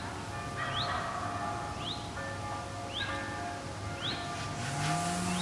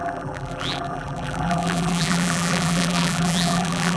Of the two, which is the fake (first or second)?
second